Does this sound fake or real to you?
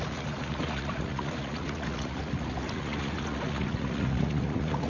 fake